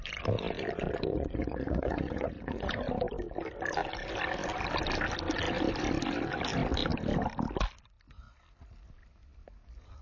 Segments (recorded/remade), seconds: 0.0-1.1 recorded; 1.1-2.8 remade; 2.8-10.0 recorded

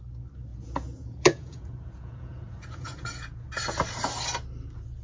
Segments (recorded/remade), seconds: 0.0-0.5 recorded; 0.5-3.5 remade; 3.5-5.0 recorded